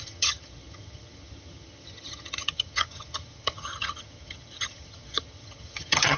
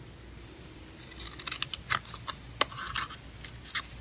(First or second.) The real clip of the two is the second